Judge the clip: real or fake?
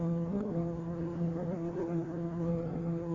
fake